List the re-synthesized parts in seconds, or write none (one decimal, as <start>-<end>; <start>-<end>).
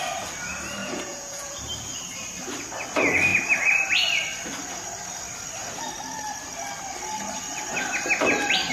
0.8-1.6